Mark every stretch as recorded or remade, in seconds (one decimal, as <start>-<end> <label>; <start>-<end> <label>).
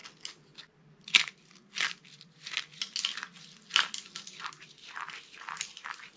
0.0-6.2 recorded